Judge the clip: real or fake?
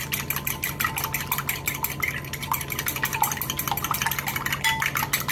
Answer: real